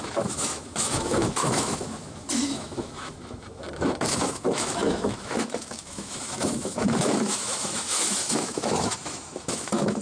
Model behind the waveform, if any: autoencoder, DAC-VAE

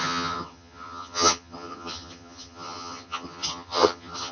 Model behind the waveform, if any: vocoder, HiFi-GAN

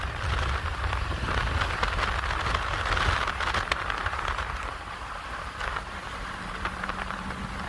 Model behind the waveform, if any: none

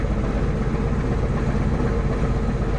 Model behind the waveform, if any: none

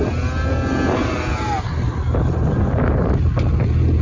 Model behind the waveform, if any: none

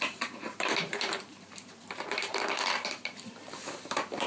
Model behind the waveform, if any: vocoder, BigVGAN v2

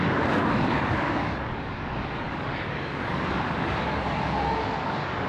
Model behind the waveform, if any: codec, DAC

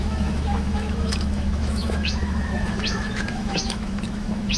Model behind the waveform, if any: autoencoder, DAC-VAE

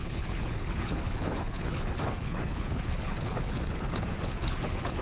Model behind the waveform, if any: codec, HILCodec